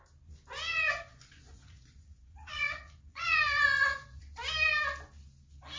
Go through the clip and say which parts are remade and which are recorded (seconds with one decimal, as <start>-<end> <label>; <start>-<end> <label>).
0.0-0.7 recorded; 0.7-4.2 remade; 4.2-5.8 recorded